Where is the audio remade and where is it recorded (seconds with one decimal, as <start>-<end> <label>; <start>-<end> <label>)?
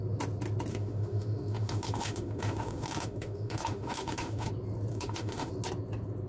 0.0-0.7 recorded; 0.7-4.5 remade; 4.5-4.9 recorded; 4.9-5.5 remade; 5.5-6.3 recorded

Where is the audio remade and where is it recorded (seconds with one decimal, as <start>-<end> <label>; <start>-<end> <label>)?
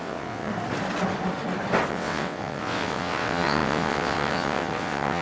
0.0-0.5 remade; 0.5-1.9 recorded; 1.9-5.2 remade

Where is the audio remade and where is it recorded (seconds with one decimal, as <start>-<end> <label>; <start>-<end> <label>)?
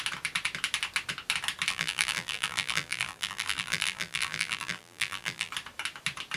0.0-1.7 recorded; 1.7-5.5 remade; 5.5-6.4 recorded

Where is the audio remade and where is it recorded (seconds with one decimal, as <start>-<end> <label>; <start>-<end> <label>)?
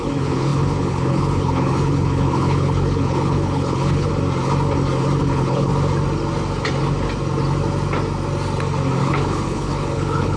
0.0-4.1 remade; 4.1-5.2 recorded; 5.2-5.7 remade; 5.7-9.0 recorded; 9.0-10.4 remade